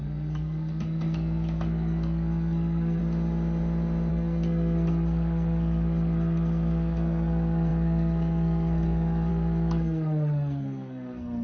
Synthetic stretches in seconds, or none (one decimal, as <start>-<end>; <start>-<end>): 0.0-3.0; 4.1-11.4